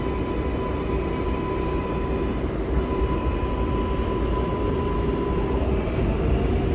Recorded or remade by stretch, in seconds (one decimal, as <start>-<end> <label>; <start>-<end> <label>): 0.0-6.7 recorded